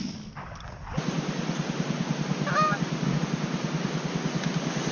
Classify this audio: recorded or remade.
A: recorded